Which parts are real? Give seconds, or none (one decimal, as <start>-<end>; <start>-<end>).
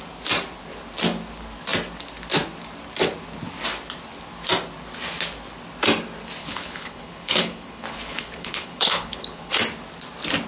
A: 0.0-6.4; 9.5-10.5